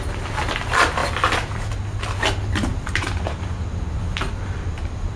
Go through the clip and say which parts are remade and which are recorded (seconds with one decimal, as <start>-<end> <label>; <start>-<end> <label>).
0.0-5.2 recorded